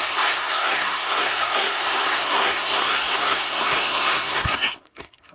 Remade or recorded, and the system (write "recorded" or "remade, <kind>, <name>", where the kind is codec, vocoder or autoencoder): remade, codec, SNAC